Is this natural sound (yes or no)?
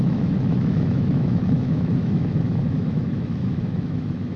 no